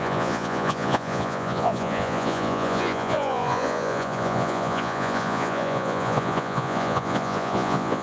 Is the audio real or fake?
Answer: fake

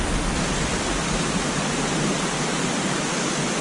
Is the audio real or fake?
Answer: real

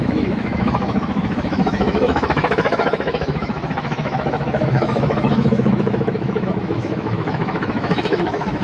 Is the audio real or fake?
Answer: fake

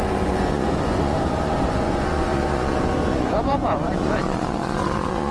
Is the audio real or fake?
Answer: fake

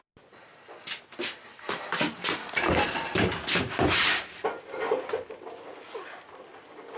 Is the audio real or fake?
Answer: real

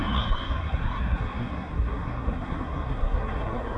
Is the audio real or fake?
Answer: fake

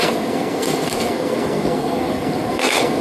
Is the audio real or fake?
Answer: fake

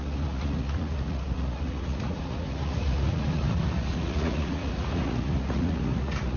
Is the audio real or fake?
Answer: fake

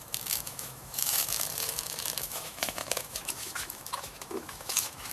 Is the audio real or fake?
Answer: fake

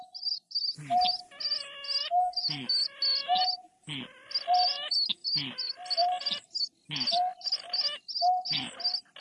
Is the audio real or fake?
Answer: real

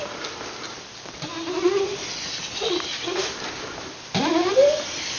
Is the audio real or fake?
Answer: real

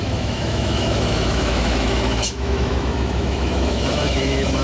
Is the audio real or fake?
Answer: fake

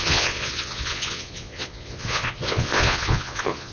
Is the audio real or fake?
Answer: fake